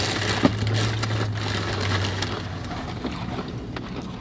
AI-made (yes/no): no